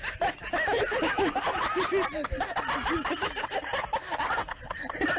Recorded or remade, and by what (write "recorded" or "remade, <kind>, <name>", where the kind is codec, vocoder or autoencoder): recorded